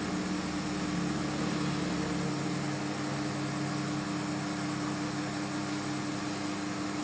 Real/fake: real